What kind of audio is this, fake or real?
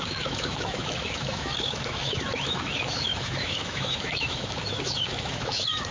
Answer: fake